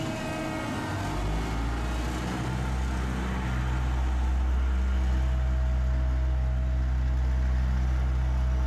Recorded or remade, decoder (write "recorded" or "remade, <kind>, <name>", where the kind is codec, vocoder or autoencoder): recorded